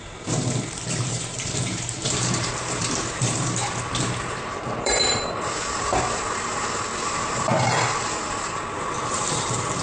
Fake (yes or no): yes